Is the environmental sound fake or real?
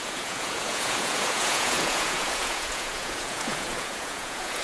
fake